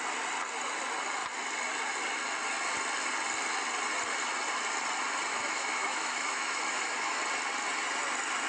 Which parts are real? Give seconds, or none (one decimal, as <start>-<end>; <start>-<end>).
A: 0.0-5.3; 7.2-8.5